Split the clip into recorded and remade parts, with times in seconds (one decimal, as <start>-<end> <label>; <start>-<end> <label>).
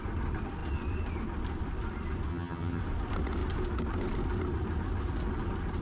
0.0-2.3 recorded; 2.3-2.8 remade; 2.8-5.8 recorded